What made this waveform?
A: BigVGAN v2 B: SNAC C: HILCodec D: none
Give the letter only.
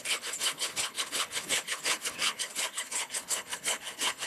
C